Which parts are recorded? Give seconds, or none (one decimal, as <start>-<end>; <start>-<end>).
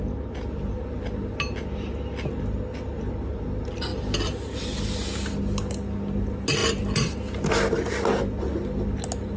0.0-9.4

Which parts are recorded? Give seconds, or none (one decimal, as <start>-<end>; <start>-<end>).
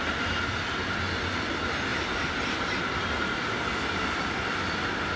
0.0-1.9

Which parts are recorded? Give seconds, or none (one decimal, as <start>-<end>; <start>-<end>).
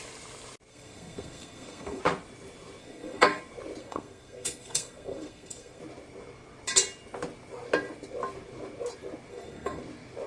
0.0-0.7; 2.0-2.8; 3.4-3.8; 5.8-9.3; 9.8-10.3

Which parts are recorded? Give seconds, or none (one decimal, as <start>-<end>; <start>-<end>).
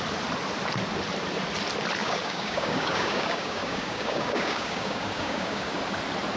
0.0-2.0; 5.8-6.4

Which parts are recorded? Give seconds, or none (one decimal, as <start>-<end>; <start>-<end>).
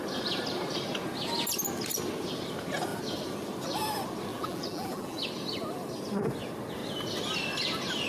0.0-4.3; 5.2-8.1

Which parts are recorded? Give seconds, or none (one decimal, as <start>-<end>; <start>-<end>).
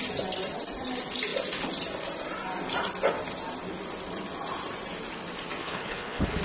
0.0-5.6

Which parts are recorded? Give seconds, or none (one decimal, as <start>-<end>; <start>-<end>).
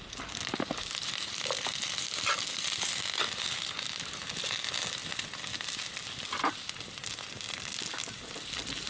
0.0-8.9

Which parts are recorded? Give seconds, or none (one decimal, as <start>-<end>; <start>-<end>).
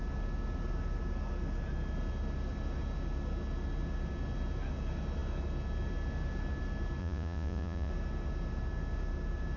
0.0-7.0; 7.9-9.6